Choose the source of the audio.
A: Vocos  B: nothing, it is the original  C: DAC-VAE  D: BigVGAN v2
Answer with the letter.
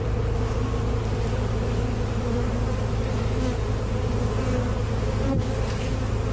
B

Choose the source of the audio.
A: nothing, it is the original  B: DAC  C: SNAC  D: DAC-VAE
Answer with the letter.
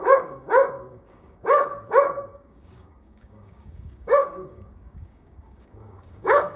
B